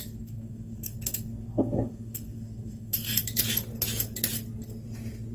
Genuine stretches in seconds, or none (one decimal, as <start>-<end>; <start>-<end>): 3.2-5.3